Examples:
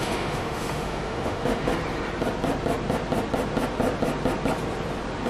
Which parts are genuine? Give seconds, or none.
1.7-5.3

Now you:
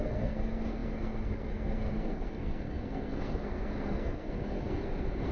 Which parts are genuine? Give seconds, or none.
none